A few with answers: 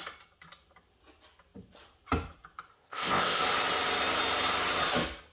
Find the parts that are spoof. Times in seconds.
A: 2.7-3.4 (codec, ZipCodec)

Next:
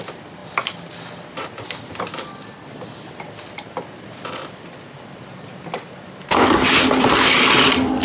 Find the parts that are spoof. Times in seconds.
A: none

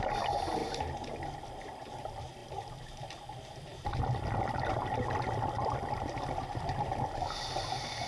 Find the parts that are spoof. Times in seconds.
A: none

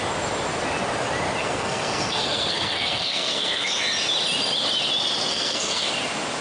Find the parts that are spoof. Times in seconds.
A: 1.4-3.8 (codec, SNAC); 5.3-5.9

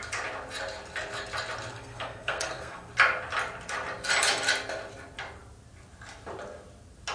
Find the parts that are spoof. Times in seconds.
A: 1.7-2.9 (codec, SNAC)

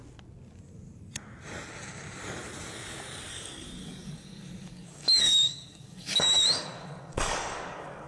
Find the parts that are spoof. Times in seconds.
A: 3.3-8.1 (codec, DAC)

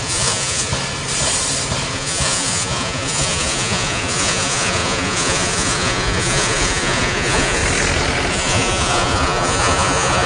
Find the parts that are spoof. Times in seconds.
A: 0.0-0.7 (vocoder, Vocos); 1.9-7.6; 8.3-10.3

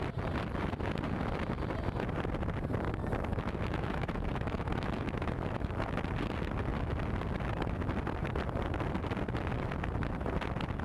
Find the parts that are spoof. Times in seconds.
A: 3.3-5.7 (autoencoder, DAC-VAE)